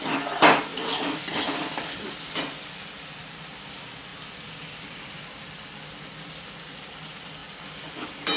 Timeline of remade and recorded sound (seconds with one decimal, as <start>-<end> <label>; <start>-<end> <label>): 0.0-0.7 recorded; 0.7-2.3 remade; 2.3-4.1 recorded; 4.1-5.0 remade; 5.0-7.4 recorded; 7.4-7.9 remade; 7.9-8.4 recorded